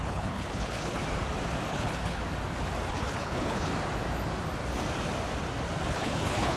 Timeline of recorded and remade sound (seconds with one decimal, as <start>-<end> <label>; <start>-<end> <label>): 0.0-1.0 remade; 1.0-1.7 recorded; 1.7-2.2 remade; 2.2-2.9 recorded; 2.9-3.7 remade; 3.7-5.9 recorded; 5.9-6.6 remade